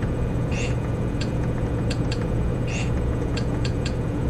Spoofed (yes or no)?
yes